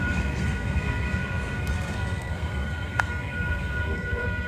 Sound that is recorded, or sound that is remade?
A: remade